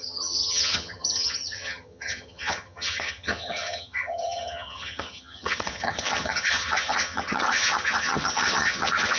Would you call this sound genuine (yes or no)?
no